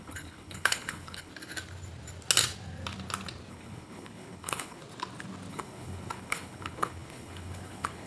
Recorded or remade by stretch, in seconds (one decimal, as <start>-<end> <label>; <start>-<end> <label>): 0.0-1.3 remade; 1.3-3.5 recorded; 3.5-4.8 remade; 4.8-5.5 recorded; 5.5-8.1 remade